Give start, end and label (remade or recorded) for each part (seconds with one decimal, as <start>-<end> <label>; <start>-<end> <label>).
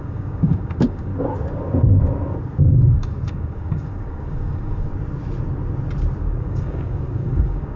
0.0-1.1 remade; 1.1-2.6 recorded; 2.6-4.9 remade; 4.9-6.2 recorded; 6.2-7.8 remade